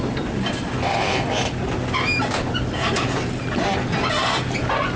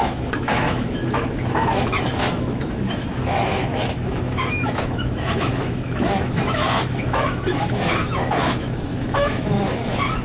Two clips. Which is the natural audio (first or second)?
first